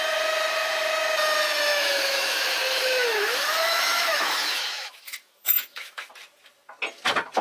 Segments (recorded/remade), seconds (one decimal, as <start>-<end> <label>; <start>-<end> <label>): 0.0-1.7 recorded; 1.7-6.1 remade; 6.1-7.4 recorded

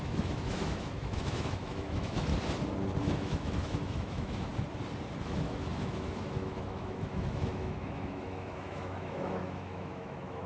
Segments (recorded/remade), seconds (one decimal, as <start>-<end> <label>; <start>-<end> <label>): 0.0-2.3 remade; 2.3-3.0 recorded; 3.0-4.5 remade; 4.5-5.2 recorded; 5.2-10.5 remade

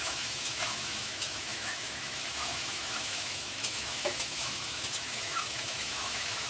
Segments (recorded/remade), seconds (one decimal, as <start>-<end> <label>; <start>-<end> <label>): 0.0-6.5 remade